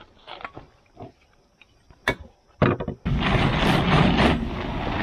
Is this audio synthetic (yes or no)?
no